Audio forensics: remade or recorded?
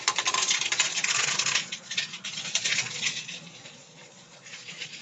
remade